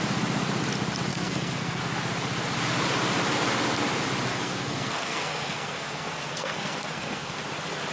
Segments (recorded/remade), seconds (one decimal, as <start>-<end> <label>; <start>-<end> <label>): 0.0-1.1 recorded; 1.1-1.8 remade; 1.8-4.3 recorded; 4.3-7.4 remade; 7.4-7.9 recorded